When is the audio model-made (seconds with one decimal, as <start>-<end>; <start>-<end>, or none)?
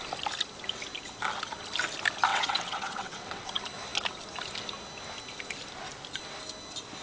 2.3-3.5